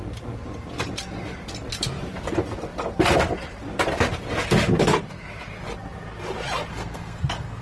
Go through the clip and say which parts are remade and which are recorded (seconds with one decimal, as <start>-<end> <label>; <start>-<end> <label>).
0.0-6.7 recorded; 6.7-7.6 remade